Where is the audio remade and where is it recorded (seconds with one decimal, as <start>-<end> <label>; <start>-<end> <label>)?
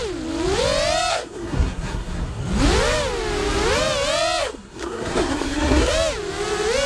0.0-1.1 recorded; 1.1-2.4 remade; 2.4-4.4 recorded; 4.4-5.9 remade; 5.9-6.9 recorded